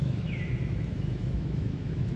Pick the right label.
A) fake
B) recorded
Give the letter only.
A